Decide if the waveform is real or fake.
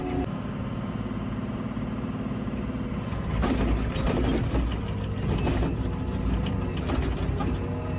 real